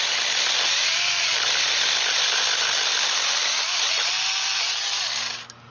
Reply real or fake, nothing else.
real